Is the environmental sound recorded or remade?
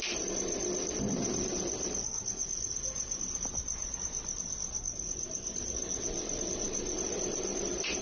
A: remade